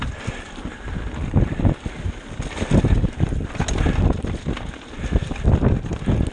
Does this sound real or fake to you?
real